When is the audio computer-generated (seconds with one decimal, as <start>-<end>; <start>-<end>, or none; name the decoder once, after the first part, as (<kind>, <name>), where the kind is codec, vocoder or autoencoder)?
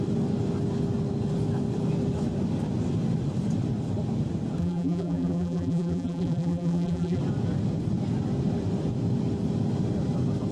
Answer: 4.6-7.2 (vocoder, BigVGAN v2)